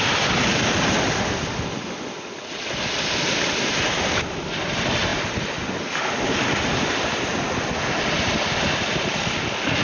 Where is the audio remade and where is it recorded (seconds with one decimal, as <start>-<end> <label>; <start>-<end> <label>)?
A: 0.0-9.8 recorded